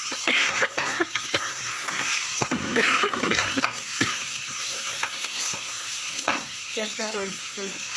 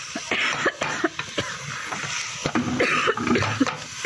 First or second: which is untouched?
second